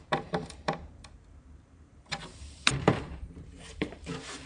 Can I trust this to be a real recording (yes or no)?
no